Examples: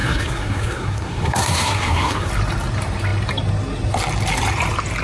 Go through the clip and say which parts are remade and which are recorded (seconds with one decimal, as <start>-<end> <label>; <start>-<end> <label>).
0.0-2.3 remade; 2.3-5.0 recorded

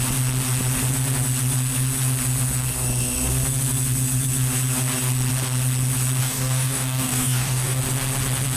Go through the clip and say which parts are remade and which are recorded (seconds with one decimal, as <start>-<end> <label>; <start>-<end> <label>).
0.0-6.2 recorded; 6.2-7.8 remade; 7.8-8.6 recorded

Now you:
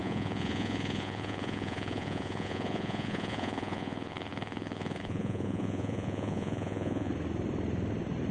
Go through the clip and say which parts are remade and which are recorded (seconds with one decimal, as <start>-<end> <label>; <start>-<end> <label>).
0.0-7.1 remade; 7.1-8.3 recorded

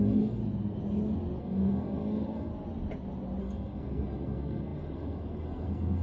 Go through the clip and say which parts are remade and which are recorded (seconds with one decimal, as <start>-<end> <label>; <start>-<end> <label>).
0.0-0.4 remade; 0.4-1.4 recorded; 1.4-2.5 remade; 2.5-3.4 recorded; 3.4-6.0 remade

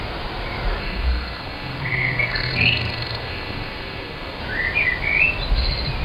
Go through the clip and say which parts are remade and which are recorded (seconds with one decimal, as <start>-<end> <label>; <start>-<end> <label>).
0.0-0.8 recorded; 0.8-4.4 remade; 4.4-6.0 recorded

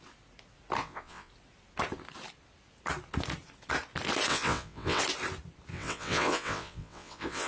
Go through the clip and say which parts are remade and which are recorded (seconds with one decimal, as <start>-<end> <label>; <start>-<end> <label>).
0.0-0.8 recorded; 0.8-1.3 remade; 1.3-4.3 recorded; 4.3-5.0 remade; 5.0-5.7 recorded; 5.7-7.5 remade

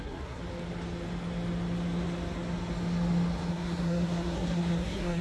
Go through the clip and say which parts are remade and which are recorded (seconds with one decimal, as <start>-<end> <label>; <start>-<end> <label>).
0.0-0.4 remade; 0.4-3.5 recorded; 3.5-5.2 remade